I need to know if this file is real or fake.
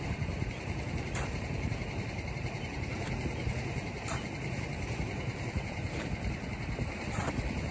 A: fake